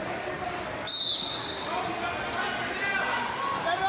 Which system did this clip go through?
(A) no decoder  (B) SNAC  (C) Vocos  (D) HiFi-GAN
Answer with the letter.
A